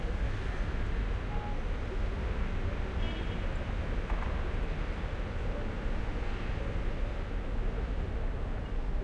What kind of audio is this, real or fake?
real